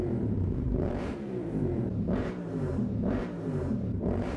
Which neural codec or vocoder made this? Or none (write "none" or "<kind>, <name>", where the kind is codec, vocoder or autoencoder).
vocoder, BigVGAN v2